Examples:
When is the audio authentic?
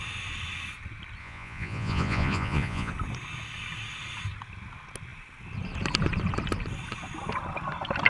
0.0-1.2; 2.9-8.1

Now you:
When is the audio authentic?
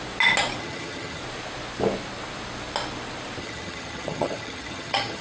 0.0-0.6; 1.2-3.4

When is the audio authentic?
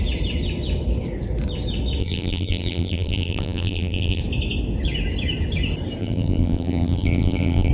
0.0-2.0; 4.2-6.0